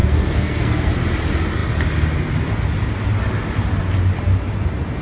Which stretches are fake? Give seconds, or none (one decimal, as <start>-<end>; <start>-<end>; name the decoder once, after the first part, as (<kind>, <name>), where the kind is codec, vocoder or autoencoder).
0.0-0.9 (codec, SNAC)